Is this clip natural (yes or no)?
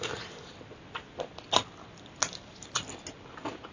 yes